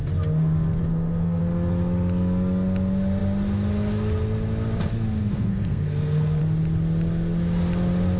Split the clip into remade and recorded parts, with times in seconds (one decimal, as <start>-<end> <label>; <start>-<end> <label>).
0.0-0.8 recorded; 0.8-1.4 remade; 1.4-5.2 recorded; 5.2-6.4 remade; 6.4-8.2 recorded